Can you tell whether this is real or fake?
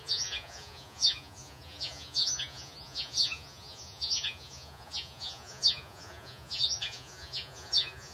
fake